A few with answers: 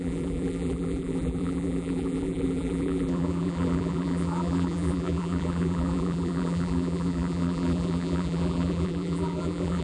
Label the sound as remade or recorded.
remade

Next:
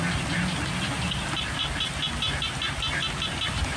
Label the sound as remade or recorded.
recorded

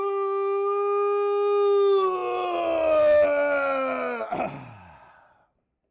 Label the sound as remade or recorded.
recorded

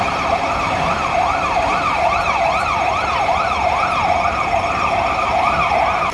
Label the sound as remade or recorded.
remade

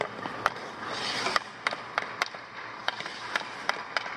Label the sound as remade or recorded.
remade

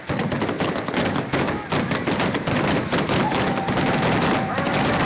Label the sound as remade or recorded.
recorded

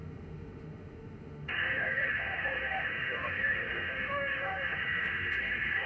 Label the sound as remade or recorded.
remade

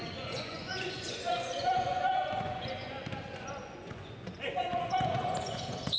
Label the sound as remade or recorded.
remade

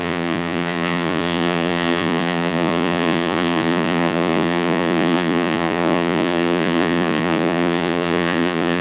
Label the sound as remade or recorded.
remade